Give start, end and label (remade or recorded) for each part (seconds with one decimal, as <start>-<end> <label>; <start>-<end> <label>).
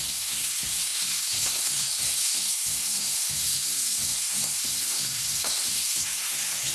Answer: 0.0-6.7 remade